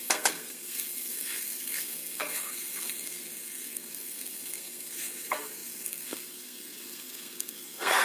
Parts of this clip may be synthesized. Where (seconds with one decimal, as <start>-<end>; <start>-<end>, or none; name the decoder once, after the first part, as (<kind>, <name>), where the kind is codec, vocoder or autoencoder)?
0.0-8.0 (codec, SNAC)